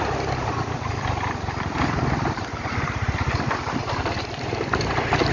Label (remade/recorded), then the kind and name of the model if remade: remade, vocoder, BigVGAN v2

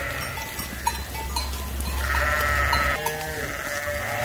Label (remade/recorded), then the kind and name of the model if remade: recorded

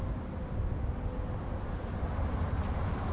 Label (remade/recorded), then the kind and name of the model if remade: recorded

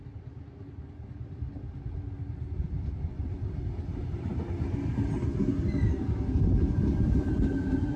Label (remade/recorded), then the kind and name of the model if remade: recorded